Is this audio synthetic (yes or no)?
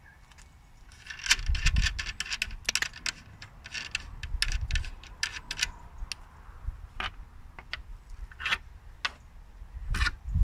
no